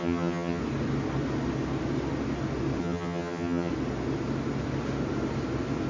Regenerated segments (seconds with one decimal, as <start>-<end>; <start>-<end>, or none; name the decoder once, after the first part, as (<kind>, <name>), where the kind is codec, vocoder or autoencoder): 0.0-0.6 (vocoder, HiFi-GAN); 2.8-3.7